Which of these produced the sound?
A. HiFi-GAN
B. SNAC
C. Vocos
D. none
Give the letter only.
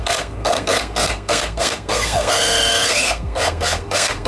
B